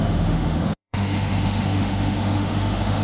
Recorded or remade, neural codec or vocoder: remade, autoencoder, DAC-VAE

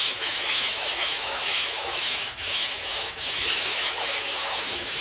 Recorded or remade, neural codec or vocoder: remade, autoencoder, DAC-VAE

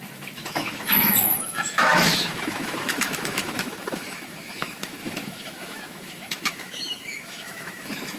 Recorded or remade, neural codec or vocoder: remade, autoencoder, DAC-VAE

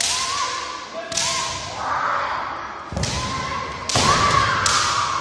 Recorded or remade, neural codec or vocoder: recorded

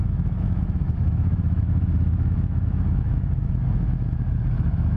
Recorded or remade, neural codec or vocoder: remade, autoencoder, DAC-VAE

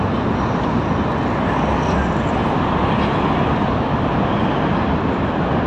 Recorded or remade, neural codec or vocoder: recorded